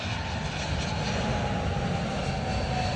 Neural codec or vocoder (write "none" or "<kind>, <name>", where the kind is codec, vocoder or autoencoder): none